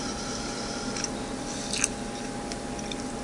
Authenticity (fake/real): real